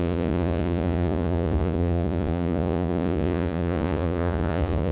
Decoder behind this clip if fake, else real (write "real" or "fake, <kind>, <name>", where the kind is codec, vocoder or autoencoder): fake, vocoder, Vocos